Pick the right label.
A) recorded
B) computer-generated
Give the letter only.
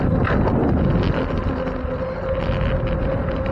A